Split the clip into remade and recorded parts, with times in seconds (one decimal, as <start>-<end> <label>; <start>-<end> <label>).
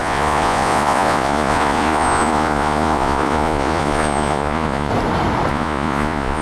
0.0-4.9 remade; 4.9-5.5 recorded; 5.5-6.4 remade